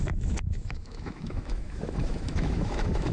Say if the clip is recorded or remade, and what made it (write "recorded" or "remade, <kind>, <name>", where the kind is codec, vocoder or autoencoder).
remade, autoencoder, DAC-VAE